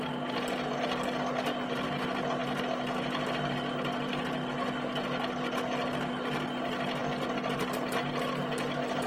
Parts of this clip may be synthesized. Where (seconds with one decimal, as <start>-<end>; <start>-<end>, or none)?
none